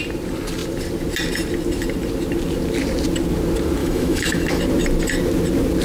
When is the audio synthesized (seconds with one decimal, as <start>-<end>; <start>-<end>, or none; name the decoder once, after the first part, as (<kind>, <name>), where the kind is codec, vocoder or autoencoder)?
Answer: 3.8-4.6 (autoencoder, DAC-VAE)